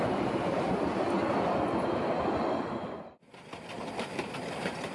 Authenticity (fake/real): real